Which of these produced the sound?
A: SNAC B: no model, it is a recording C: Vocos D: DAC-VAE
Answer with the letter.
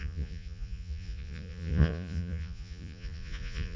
C